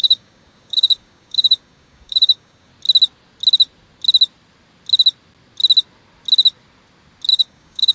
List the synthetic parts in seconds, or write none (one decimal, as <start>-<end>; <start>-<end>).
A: 0.0-2.7; 7.3-7.9